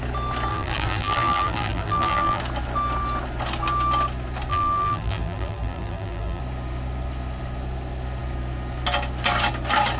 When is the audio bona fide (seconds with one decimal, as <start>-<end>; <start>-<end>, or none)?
0.0-0.5; 2.4-4.5; 6.4-10.0